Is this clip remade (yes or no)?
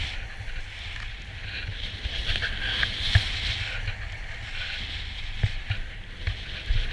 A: no